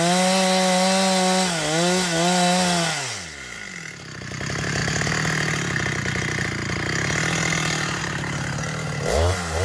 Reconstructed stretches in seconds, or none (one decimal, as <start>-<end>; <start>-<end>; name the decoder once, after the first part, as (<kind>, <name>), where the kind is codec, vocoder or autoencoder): none